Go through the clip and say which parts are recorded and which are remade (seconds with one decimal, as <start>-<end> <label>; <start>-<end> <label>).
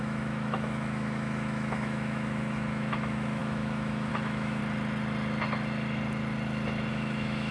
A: 0.0-4.6 remade; 4.6-6.9 recorded; 6.9-7.5 remade